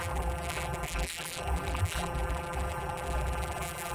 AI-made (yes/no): yes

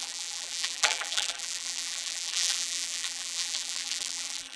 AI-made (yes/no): yes